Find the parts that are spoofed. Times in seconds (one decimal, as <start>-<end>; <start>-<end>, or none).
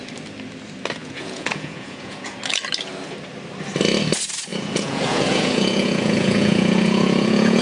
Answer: 1.0-2.4; 4.5-7.6